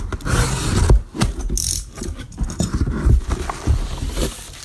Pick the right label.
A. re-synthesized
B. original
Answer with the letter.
B